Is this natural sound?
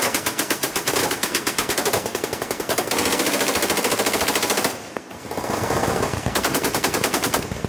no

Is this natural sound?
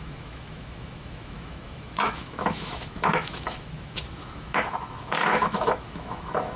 no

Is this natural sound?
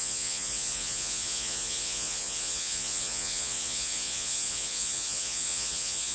no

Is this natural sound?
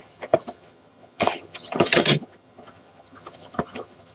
no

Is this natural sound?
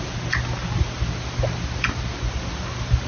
yes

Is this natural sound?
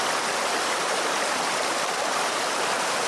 yes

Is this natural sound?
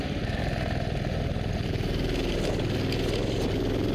yes